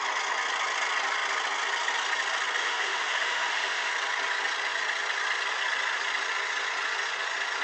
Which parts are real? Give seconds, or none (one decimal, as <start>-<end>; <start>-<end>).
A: 0.0-2.6; 3.9-7.6